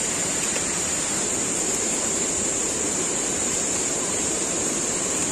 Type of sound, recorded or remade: remade